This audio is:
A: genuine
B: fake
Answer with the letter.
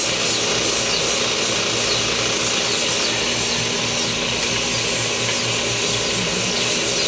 A